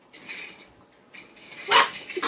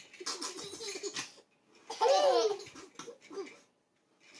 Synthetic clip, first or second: first